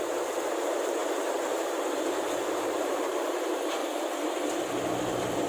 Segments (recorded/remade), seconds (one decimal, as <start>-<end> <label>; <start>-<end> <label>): 0.0-3.8 remade; 3.8-5.5 recorded